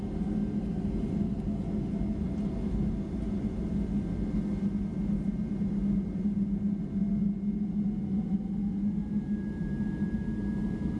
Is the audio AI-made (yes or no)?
no